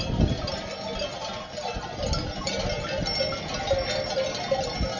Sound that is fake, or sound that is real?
real